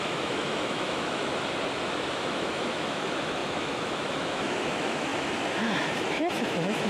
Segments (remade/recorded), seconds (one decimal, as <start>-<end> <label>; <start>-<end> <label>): 0.0-1.3 remade; 1.3-2.0 recorded; 2.0-6.9 remade